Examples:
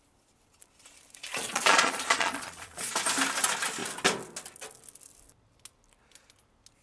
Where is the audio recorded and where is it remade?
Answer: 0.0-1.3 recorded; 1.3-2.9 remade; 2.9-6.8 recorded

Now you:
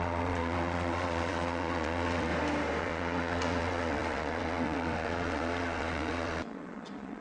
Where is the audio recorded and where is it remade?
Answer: 0.0-2.3 remade; 2.3-2.8 recorded; 2.8-7.2 remade